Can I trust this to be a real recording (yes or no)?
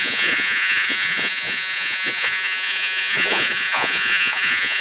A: no